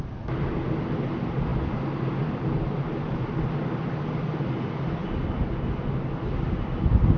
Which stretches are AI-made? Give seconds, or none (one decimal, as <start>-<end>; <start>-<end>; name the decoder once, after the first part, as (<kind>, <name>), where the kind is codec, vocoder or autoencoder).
none